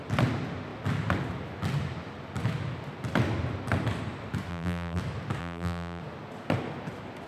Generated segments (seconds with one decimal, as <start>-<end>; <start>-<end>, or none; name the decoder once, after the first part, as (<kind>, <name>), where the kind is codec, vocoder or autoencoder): 4.5-5.0 (vocoder, BigVGAN v2); 5.4-6.0